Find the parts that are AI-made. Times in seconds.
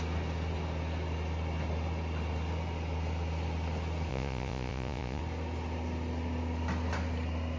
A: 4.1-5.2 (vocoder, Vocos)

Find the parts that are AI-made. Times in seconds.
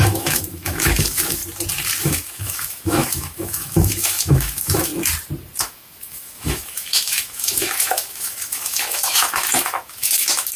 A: 0.0-1.4 (autoencoder, DAC-VAE); 2.0-4.9; 5.6-10.6